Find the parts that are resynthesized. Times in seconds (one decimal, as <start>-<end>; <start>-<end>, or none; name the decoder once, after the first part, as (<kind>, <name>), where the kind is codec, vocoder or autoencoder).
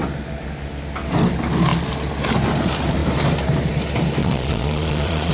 4.2-5.3 (vocoder, Vocos)